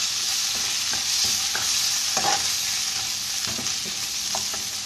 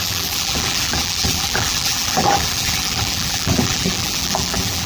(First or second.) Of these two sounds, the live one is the first